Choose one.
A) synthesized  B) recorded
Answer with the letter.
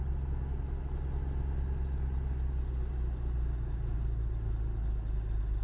B